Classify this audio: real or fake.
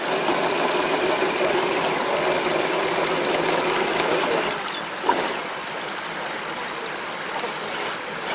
real